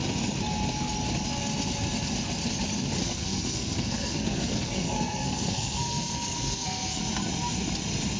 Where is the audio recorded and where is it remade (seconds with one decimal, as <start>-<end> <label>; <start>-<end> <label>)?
0.0-3.0 recorded; 3.0-7.0 remade; 7.0-8.2 recorded